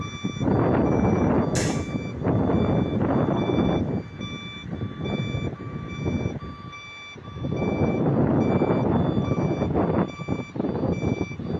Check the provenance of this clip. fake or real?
real